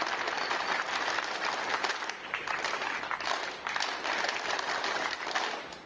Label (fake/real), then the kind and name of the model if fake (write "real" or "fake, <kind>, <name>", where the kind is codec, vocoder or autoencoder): real